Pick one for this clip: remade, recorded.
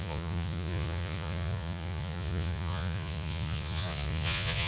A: remade